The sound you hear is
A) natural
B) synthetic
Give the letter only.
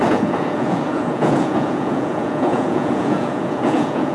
B